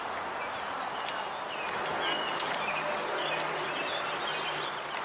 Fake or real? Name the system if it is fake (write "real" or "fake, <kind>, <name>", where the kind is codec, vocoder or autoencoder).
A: real